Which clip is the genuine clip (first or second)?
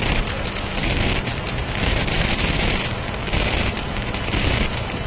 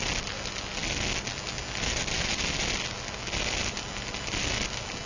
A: second